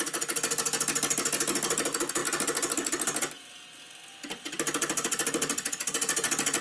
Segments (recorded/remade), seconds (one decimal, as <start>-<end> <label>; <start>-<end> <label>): 0.0-6.6 recorded